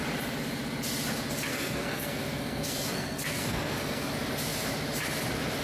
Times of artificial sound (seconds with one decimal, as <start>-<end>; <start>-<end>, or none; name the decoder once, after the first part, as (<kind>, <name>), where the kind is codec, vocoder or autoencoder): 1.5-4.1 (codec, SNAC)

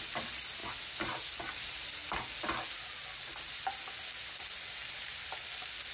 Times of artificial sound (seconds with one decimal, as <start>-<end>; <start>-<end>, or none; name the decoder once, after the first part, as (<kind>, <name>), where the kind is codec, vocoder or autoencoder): none

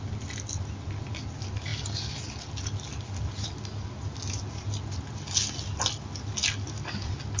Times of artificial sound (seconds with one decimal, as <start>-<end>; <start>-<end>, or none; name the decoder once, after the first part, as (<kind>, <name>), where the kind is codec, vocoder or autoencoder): none

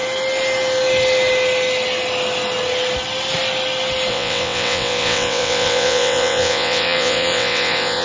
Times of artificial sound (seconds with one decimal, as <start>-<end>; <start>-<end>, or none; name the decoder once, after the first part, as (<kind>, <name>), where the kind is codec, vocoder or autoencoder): 4.1-8.0 (vocoder, WaveNeXt)

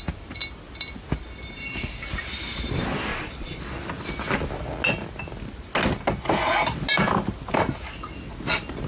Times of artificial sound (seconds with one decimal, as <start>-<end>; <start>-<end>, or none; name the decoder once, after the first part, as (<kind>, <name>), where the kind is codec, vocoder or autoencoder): 3.1-3.6 (vocoder, Vocos)

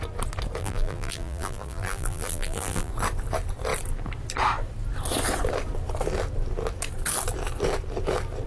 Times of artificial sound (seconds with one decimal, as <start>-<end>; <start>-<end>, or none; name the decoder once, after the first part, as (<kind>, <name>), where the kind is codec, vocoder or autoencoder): 0.6-2.9 (vocoder, BigVGAN v2)